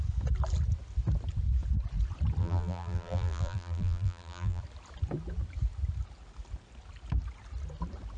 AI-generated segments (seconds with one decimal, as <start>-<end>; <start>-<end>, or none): 2.4-4.6